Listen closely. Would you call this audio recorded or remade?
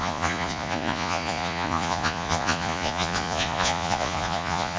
remade